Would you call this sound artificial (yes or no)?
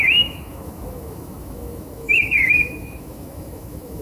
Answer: yes